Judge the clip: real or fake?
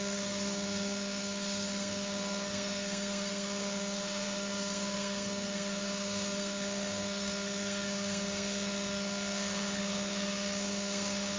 fake